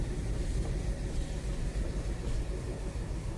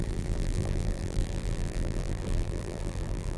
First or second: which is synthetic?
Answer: second